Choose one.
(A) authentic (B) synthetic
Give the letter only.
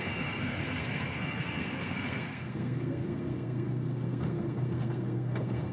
B